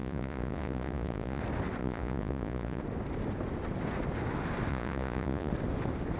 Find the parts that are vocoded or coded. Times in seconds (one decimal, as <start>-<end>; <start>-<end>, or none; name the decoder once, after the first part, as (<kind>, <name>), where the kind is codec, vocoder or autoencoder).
0.0-1.4 (vocoder, Vocos); 1.8-2.8; 4.7-5.5